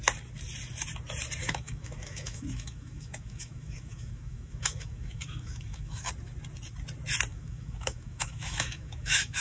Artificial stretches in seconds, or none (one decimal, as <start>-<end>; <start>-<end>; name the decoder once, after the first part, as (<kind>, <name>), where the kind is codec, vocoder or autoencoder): 1.4-6.1 (autoencoder, DAC-VAE); 7.3-9.4